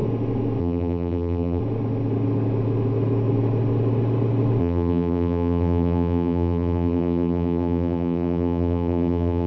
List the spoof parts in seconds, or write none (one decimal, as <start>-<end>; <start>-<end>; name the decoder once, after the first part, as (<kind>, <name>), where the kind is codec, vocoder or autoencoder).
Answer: 0.6-1.6 (vocoder, BigVGAN v2); 4.6-9.5